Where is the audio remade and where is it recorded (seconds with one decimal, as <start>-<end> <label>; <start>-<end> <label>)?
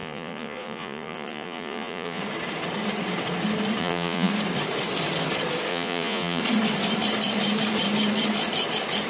0.0-2.2 remade; 2.2-3.8 recorded; 3.8-4.3 remade; 4.3-5.7 recorded; 5.7-6.4 remade; 6.4-9.1 recorded